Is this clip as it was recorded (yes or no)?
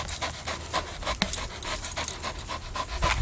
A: yes